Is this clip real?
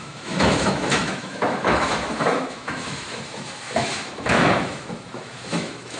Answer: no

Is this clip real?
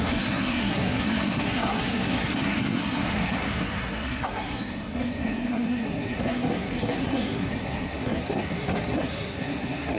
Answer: no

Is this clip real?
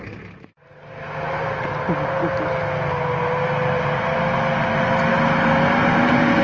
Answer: yes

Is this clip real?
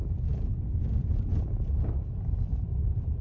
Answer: no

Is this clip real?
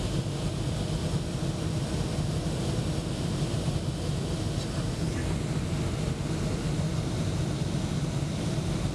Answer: yes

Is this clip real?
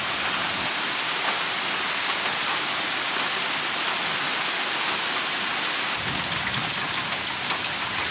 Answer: yes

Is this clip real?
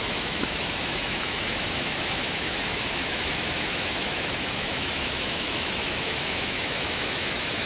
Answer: no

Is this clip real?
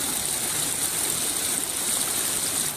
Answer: yes